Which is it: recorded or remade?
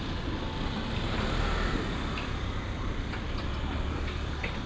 recorded